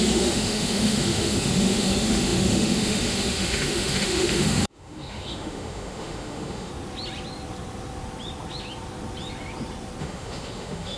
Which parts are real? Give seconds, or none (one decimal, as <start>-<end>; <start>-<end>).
6.7-10.0